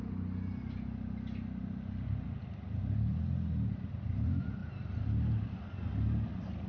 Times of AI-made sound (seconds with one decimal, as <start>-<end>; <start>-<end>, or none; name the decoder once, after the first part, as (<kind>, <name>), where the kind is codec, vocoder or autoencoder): none